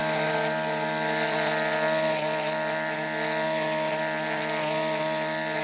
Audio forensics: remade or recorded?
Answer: recorded